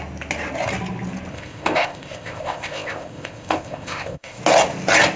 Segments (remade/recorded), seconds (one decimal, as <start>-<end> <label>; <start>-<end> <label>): 0.0-1.3 recorded; 1.3-4.4 remade; 4.4-5.2 recorded

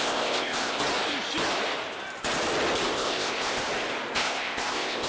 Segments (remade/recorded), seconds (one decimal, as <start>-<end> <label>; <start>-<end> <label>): 0.0-0.8 remade; 0.8-2.9 recorded; 2.9-3.6 remade; 3.6-4.1 recorded; 4.1-5.1 remade

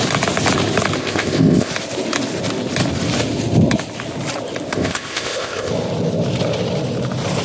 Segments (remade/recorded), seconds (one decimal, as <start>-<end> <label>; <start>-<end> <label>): 0.0-1.0 recorded; 1.0-1.7 remade; 1.7-4.7 recorded; 4.7-5.7 remade; 5.7-7.4 recorded